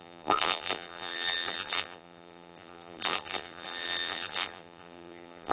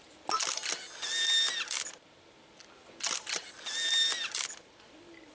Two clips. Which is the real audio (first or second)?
second